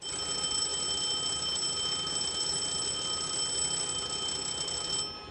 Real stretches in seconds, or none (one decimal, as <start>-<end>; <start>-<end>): 0.0-5.3